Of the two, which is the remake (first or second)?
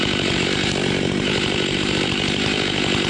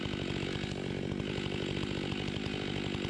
first